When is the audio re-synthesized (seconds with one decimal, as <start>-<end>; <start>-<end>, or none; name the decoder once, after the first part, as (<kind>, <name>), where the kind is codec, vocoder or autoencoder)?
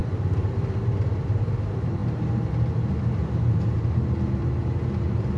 0.0-1.4 (vocoder, BigVGAN v2)